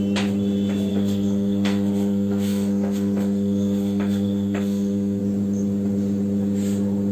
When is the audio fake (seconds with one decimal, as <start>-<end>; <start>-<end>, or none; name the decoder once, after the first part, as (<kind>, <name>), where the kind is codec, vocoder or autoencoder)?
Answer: 0.9-5.2 (codec, SNAC)